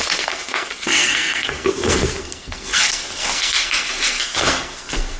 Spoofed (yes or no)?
yes